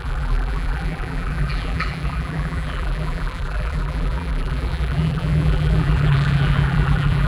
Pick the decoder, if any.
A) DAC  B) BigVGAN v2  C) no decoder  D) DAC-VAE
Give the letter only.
B